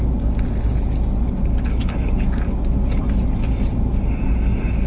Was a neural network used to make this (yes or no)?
no